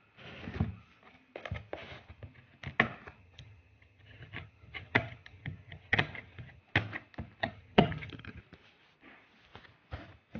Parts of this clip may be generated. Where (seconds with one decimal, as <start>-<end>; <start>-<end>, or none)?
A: 3.2-6.6; 7.4-8.4